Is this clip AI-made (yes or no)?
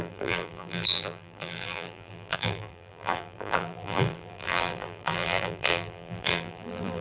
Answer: yes